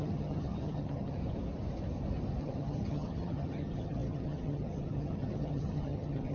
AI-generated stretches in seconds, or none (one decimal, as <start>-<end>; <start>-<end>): 0.0-1.2; 2.4-6.3